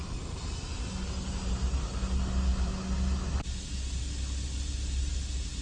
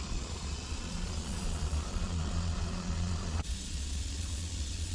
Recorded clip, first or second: first